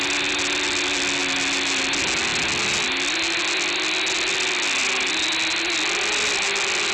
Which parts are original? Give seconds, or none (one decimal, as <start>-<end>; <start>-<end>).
0.0-6.9

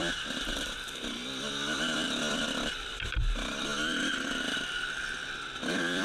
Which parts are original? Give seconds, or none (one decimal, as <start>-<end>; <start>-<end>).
1.2-2.3

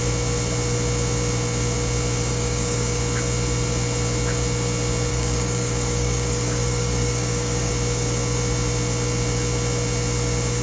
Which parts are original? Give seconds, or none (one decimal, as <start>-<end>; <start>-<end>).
0.0-2.3; 3.0-5.1; 7.7-10.6

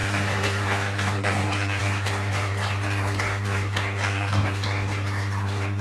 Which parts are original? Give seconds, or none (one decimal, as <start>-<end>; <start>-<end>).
none